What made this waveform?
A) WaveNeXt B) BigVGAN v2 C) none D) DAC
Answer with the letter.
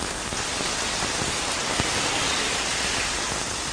B